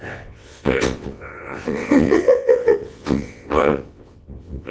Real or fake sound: fake